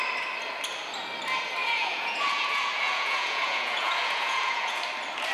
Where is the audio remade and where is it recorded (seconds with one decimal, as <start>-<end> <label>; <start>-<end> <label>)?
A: 0.0-1.6 recorded; 1.6-4.8 remade; 4.8-5.3 recorded